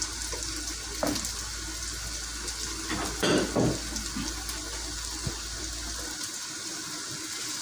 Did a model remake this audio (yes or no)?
no